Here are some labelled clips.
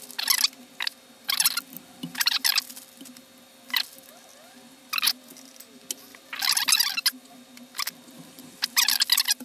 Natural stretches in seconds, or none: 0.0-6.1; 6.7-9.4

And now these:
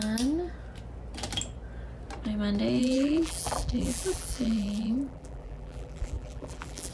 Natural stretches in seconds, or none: 0.0-2.8

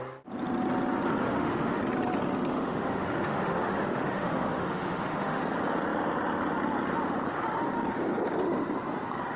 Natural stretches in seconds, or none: 0.0-1.2; 1.8-2.5; 5.4-9.4

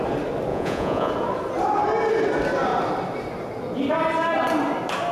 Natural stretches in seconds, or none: 0.0-0.5; 1.1-5.1